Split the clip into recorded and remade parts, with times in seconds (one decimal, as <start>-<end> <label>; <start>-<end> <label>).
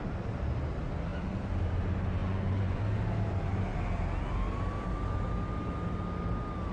0.0-2.2 recorded; 2.2-2.8 remade; 2.8-6.7 recorded